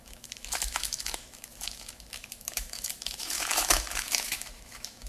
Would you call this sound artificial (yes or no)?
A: yes